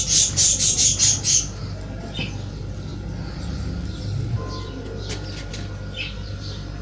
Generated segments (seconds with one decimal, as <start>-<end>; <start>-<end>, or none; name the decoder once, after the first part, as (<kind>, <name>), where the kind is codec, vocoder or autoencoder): none